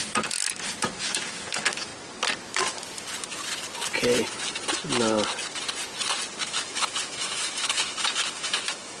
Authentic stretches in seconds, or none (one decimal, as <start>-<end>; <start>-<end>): 0.0-1.0; 1.9-6.4